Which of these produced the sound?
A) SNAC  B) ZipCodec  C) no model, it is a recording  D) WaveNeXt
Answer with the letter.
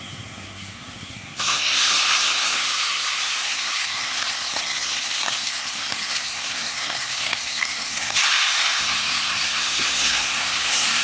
A